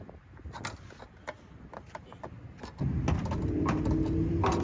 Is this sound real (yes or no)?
yes